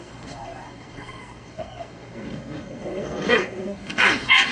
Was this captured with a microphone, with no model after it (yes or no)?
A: no